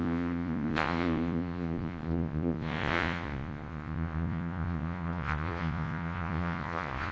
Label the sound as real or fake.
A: fake